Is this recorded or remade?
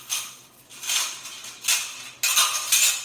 recorded